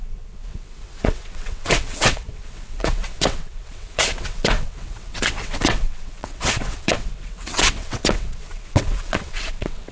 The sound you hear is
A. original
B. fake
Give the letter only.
B